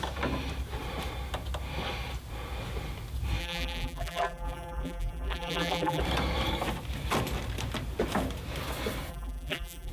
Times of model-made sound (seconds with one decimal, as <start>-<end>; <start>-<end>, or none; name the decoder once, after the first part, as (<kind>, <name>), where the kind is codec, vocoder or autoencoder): 3.4-6.0 (vocoder, BigVGAN v2); 9.1-9.9